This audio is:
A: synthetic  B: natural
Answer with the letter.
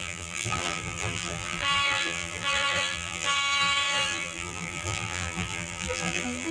A